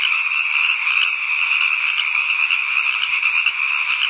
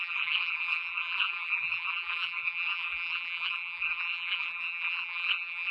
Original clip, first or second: first